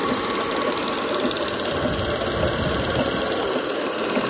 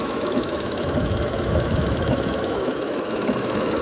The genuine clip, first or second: first